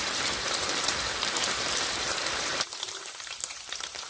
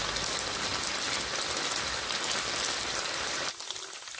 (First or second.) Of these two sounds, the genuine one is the second